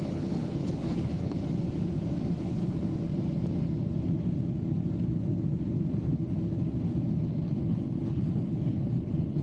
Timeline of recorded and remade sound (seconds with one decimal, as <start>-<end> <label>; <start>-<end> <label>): 0.0-1.4 remade; 1.4-2.4 recorded; 2.4-2.9 remade; 2.9-7.5 recorded; 7.5-9.4 remade